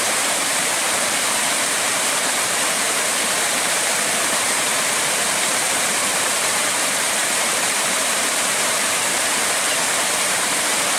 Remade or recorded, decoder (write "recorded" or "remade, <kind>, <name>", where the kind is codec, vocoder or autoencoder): remade, vocoder, BigVGAN v2